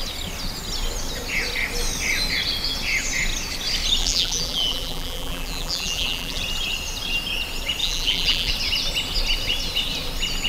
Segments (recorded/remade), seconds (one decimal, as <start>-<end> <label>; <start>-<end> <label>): 0.0-4.0 recorded; 4.0-6.4 remade; 6.4-7.8 recorded; 7.8-8.5 remade; 8.5-10.5 recorded